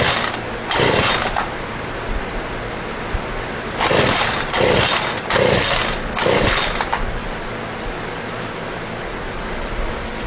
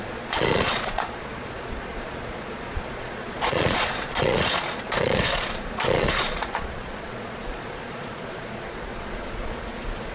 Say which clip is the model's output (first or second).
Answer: second